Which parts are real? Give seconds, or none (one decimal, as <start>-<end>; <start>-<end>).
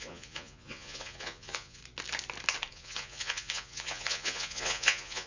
1.8-2.7